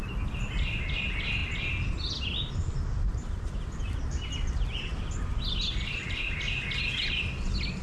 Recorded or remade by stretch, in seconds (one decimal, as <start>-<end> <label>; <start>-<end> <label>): 0.0-7.8 recorded